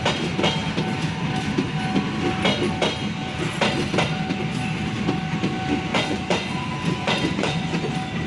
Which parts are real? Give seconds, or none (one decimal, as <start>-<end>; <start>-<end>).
0.0-5.9; 7.9-8.3